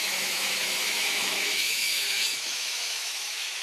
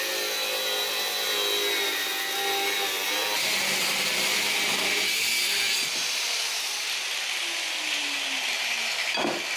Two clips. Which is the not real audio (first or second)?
first